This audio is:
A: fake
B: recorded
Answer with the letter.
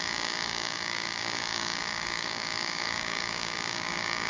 A